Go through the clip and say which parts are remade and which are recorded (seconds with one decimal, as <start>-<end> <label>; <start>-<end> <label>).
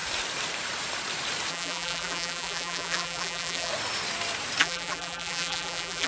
0.0-1.5 recorded; 1.5-3.7 remade; 3.7-4.6 recorded; 4.6-6.1 remade